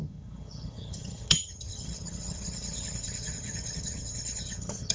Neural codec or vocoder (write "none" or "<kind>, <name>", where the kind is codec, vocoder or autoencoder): vocoder, HiFi-GAN